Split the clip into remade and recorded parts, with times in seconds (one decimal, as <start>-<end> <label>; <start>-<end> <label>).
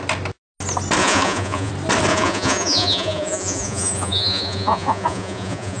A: 0.0-1.0 recorded; 1.0-1.7 remade; 1.7-2.1 recorded; 2.1-5.8 remade